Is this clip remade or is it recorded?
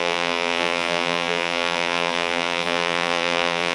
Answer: remade